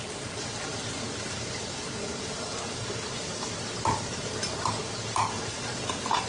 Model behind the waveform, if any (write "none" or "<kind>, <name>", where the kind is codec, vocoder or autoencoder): vocoder, BigVGAN v2